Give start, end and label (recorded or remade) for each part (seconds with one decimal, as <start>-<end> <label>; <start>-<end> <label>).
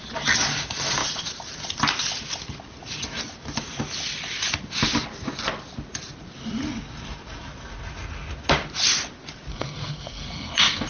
0.0-9.5 recorded; 9.5-10.9 remade